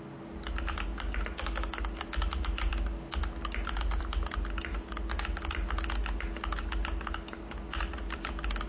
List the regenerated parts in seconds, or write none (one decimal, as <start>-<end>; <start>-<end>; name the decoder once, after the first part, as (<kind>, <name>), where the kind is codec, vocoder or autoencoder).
none